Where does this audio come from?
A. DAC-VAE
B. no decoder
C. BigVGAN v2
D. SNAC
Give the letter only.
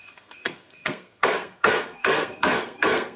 D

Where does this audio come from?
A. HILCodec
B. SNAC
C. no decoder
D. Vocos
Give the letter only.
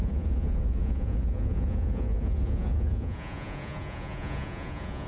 D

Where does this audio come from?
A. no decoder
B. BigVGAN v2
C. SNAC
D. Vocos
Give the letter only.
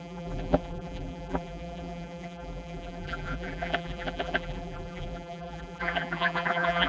B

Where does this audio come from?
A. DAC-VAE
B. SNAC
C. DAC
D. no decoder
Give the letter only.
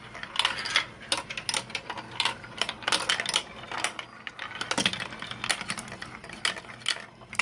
D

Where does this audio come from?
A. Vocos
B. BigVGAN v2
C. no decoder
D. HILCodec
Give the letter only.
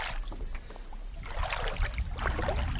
C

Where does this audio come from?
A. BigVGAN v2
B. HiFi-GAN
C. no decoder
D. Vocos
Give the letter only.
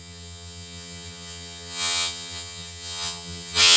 B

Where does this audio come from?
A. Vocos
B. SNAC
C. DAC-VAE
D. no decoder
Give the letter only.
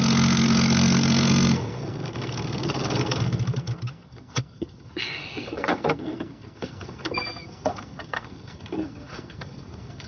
B